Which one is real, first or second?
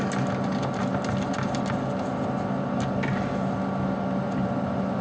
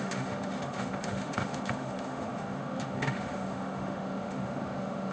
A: first